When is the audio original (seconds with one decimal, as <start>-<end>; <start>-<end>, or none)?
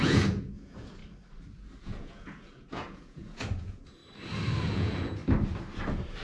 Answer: 1.0-1.8; 4.0-4.7; 5.2-6.2